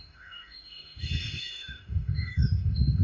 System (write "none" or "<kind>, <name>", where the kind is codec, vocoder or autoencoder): autoencoder, DAC-VAE